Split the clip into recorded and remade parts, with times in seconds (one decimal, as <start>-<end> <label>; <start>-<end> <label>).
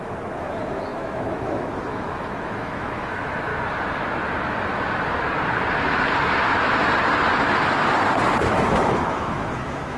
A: 0.0-3.5 remade; 3.5-8.4 recorded; 8.4-10.0 remade